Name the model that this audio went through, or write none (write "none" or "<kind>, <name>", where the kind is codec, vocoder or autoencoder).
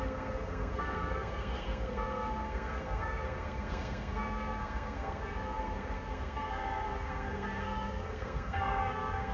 codec, SNAC